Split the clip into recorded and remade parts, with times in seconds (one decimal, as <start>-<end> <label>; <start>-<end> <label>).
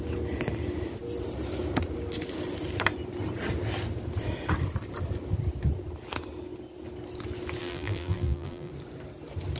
0.0-7.6 recorded; 7.6-8.7 remade; 8.7-9.6 recorded